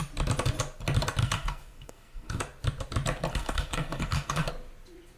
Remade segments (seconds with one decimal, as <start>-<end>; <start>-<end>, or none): 1.2-2.4; 3.3-4.5